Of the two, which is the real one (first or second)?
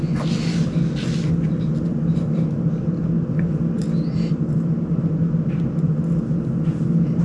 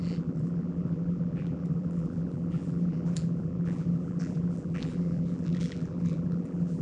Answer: first